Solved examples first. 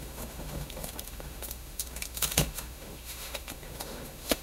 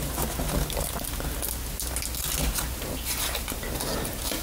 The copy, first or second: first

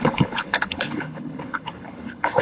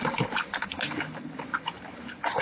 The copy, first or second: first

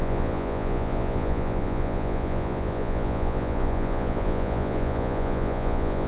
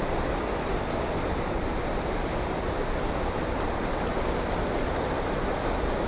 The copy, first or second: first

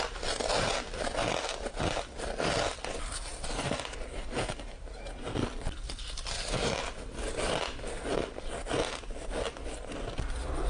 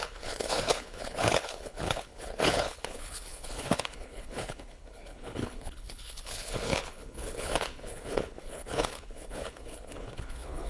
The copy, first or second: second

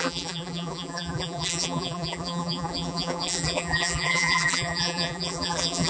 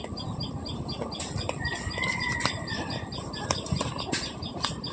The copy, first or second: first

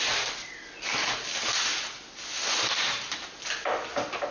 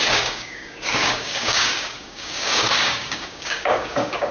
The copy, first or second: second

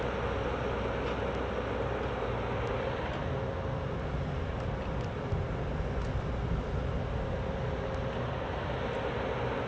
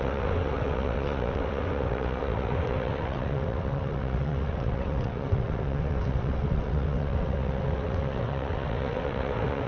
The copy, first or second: second